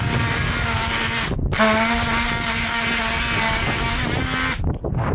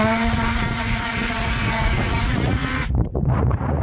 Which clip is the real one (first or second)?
first